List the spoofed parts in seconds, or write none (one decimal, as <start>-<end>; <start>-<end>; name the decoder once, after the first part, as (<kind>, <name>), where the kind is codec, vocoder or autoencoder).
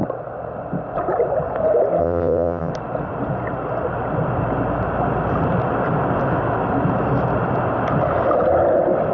2.0-2.7 (vocoder, HiFi-GAN)